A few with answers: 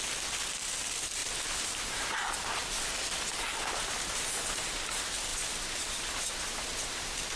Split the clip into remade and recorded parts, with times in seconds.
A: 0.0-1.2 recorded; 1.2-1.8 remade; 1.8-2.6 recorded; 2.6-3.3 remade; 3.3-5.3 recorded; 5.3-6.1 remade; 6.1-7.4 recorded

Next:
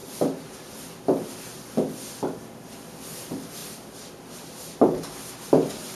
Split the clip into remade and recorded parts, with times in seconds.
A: 0.0-3.6 recorded; 3.6-4.8 remade; 4.8-5.9 recorded

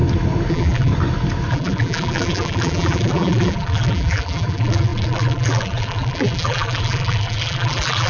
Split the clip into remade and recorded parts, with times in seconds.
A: 0.0-0.5 recorded; 0.5-0.9 remade; 0.9-1.5 recorded; 1.5-8.1 remade

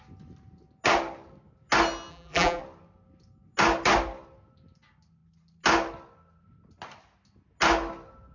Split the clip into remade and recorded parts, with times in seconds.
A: 0.0-2.1 recorded; 2.1-2.6 remade; 2.6-8.3 recorded

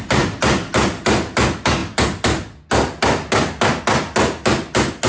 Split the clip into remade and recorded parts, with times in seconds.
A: 0.0-5.1 recorded

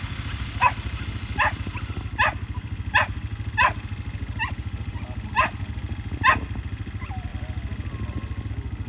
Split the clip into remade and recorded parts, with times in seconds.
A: 0.0-8.9 recorded

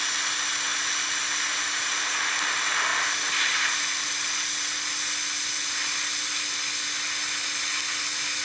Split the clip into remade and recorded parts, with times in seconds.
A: 0.0-8.4 recorded

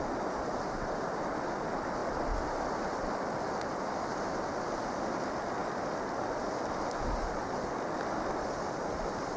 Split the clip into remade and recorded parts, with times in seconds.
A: 0.0-9.4 remade